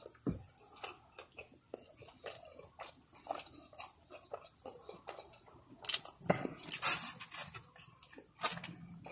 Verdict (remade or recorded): recorded